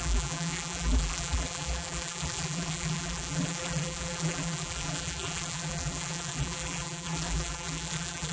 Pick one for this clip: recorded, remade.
remade